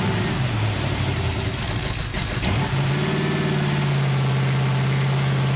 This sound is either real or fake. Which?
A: real